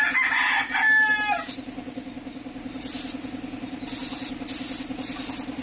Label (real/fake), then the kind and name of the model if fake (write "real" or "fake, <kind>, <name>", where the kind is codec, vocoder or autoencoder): real